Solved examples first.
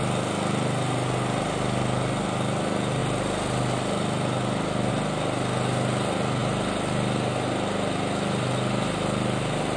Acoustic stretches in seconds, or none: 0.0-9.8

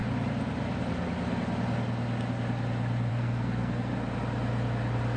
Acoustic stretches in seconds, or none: 0.0-3.1; 3.9-5.2